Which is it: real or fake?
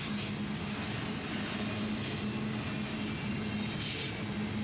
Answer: real